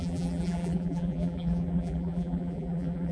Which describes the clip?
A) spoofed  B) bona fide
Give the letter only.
A